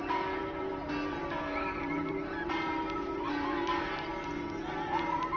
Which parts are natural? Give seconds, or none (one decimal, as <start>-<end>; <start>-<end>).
4.1-4.7